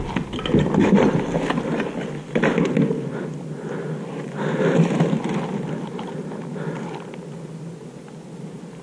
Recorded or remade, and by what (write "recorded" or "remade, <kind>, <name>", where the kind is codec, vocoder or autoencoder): recorded